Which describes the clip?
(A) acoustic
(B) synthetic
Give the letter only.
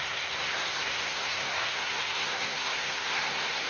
B